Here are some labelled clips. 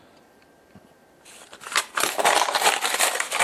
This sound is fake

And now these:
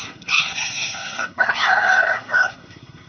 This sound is fake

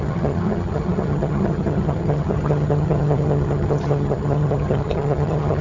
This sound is fake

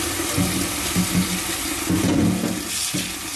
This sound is real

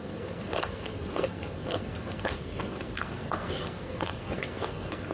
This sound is fake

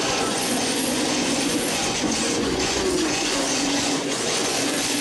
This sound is fake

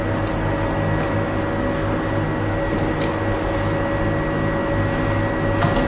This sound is real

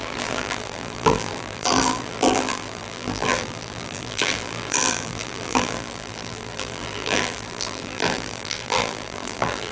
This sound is fake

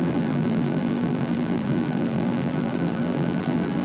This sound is fake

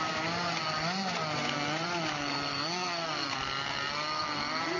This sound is real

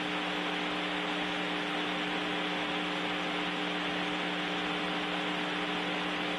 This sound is real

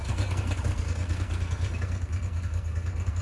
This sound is fake